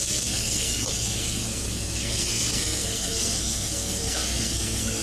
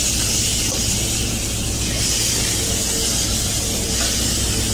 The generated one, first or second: first